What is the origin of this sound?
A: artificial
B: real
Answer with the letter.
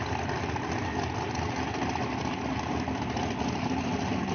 B